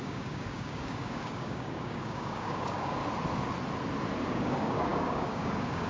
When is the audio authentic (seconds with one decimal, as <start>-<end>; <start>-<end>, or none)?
3.0-4.3